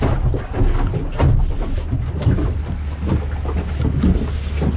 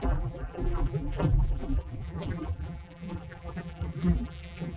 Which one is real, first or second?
first